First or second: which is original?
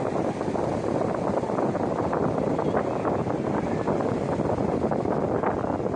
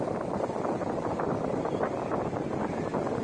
first